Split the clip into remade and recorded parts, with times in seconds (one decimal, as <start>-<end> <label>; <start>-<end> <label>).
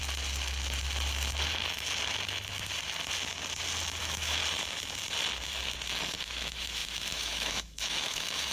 0.0-4.0 recorded; 4.0-4.4 remade; 4.4-6.2 recorded; 6.2-8.5 remade